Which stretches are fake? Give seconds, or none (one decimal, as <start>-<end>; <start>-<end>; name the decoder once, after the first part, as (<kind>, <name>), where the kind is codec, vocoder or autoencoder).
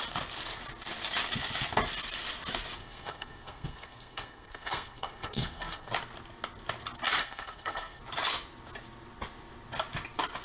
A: 2.8-5.9 (codec, SNAC); 7.2-8.0